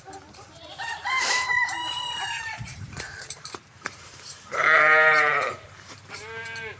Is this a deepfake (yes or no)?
yes